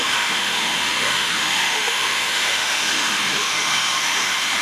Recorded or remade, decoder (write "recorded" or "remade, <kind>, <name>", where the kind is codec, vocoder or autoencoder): remade, autoencoder, DAC-VAE